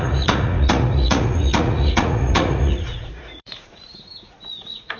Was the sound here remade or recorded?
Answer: remade